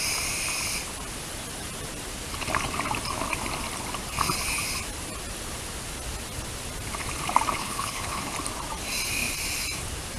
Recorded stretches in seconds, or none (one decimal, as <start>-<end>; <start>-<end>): 0.0-7.6; 8.3-10.2